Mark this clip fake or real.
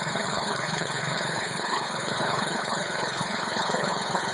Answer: fake